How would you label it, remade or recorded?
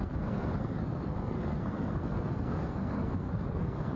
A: remade